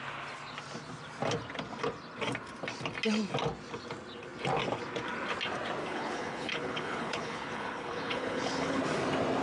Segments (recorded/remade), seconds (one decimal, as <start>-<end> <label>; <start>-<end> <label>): 0.0-5.8 recorded; 5.8-8.8 remade; 8.8-9.4 recorded